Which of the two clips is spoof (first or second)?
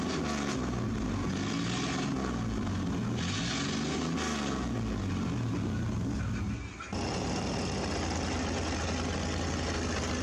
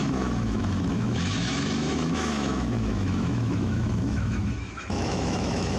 second